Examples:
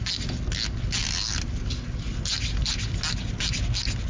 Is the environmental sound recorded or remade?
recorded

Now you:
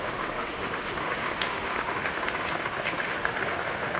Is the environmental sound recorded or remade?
remade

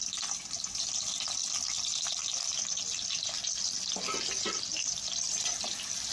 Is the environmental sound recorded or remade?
recorded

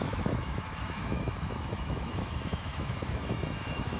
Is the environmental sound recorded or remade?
remade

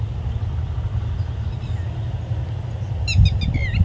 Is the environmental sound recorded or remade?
recorded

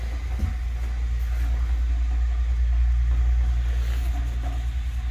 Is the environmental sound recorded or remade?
recorded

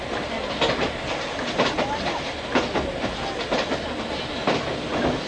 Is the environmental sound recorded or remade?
recorded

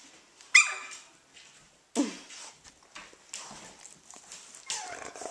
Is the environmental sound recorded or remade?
recorded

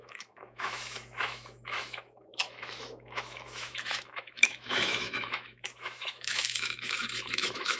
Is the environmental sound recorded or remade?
remade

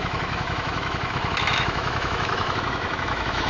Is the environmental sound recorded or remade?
remade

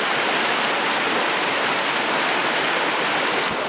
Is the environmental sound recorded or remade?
recorded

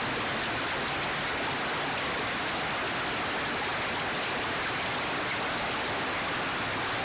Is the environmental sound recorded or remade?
recorded